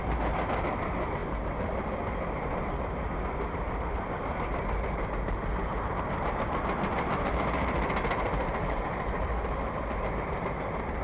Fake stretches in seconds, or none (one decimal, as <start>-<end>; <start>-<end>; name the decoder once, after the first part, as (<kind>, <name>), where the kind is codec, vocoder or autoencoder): none